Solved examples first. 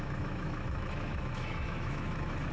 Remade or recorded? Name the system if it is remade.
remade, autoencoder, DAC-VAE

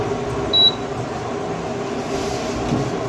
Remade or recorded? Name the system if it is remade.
recorded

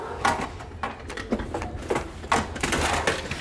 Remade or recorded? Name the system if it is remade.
recorded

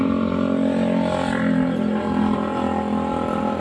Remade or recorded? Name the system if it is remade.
recorded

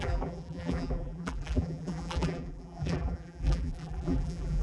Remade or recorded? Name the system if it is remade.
remade, vocoder, BigVGAN v2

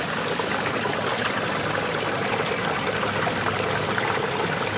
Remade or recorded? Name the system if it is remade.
recorded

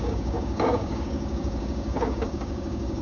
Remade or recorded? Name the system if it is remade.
remade, codec, DAC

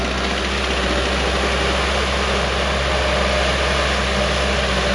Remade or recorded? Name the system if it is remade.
recorded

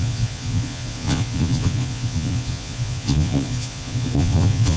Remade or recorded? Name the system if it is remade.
remade, vocoder, Vocos